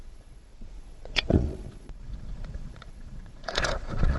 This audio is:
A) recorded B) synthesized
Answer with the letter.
B